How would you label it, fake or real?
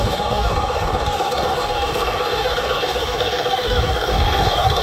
fake